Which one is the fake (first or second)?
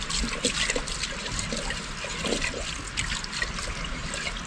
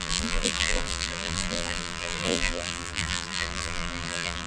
second